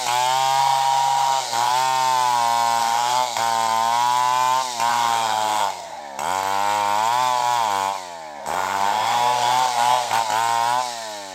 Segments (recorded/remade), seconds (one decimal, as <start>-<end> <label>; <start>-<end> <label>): 0.0-0.6 recorded; 0.6-1.7 remade; 1.7-2.8 recorded; 2.8-3.4 remade; 3.4-4.9 recorded; 4.9-6.0 remade; 6.0-8.4 recorded; 8.4-10.2 remade; 10.2-11.3 recorded